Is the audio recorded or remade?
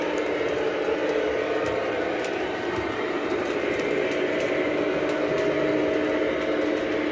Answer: recorded